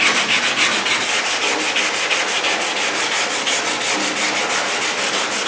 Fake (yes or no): no